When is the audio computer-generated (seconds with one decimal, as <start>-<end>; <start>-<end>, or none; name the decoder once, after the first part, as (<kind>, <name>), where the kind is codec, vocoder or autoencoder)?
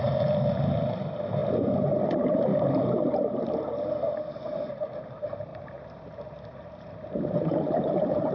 0.0-1.4 (vocoder, BigVGAN v2); 2.1-2.5; 4.7-8.3